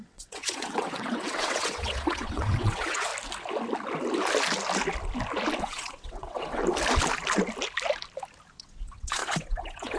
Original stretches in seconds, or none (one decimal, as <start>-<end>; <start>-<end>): 3.1-5.6; 6.6-8.5